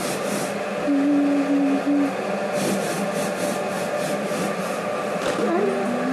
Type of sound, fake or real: real